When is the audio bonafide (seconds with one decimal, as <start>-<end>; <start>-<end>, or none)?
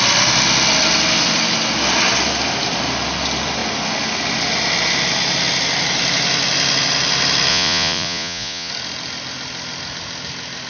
0.0-7.5; 8.7-10.7